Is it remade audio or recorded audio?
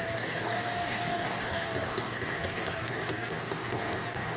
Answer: remade